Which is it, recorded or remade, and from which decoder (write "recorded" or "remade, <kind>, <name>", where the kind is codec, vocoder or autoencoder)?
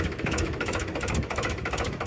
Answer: remade, autoencoder, DAC-VAE